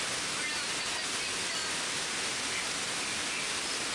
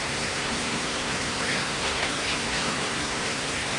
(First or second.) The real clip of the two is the first